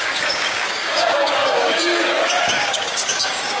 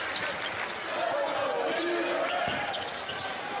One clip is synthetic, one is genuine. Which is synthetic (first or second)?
first